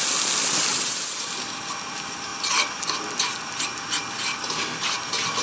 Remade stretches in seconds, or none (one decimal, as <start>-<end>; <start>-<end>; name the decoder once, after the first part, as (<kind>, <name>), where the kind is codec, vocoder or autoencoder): 0.7-1.3 (vocoder, WaveNeXt)